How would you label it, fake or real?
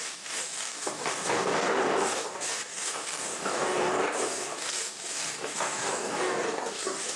fake